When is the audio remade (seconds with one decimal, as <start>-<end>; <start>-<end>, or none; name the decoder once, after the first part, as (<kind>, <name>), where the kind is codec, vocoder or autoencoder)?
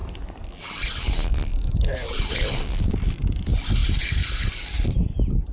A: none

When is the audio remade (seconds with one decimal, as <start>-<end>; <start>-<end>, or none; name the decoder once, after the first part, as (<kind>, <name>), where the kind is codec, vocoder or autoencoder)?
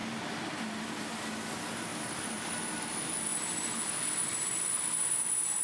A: 1.9-2.4 (vocoder, BigVGAN v2)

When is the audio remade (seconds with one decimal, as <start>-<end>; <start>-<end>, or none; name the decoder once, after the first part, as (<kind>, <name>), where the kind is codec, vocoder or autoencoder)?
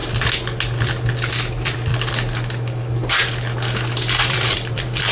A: 1.3-1.9 (vocoder, BigVGAN v2); 4.3-5.1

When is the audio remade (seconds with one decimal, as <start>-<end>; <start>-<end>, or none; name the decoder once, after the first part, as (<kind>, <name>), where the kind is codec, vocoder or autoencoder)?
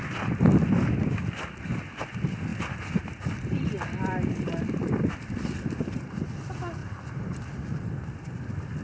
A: 2.5-6.2 (vocoder, BigVGAN v2); 6.8-8.4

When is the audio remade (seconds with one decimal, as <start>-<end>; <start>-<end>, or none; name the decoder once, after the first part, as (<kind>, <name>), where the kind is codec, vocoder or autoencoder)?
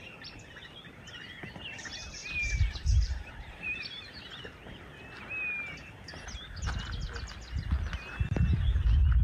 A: 2.2-3.3 (vocoder, BigVGAN v2)